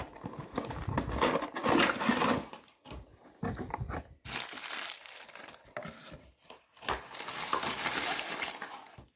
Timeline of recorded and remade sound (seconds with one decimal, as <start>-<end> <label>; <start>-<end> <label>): 0.0-9.2 recorded